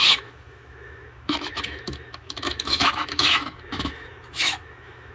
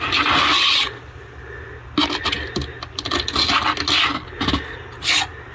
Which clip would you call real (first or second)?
second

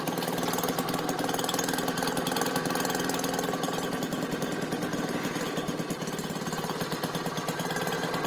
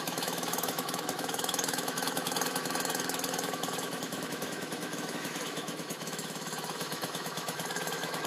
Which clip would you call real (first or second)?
first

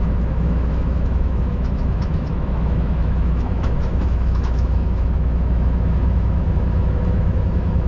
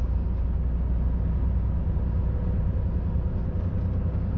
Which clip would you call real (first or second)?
second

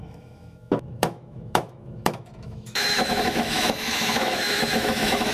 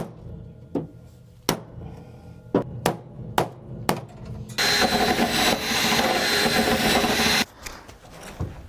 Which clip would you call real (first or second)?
second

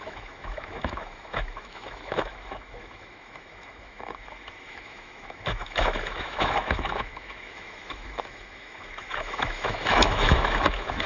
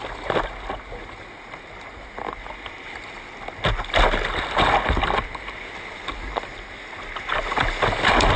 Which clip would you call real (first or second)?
second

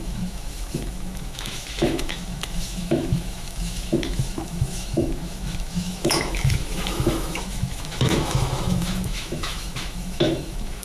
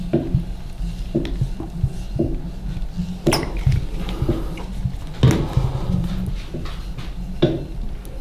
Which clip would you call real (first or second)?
second